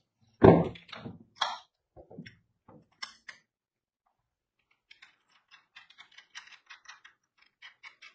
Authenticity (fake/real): real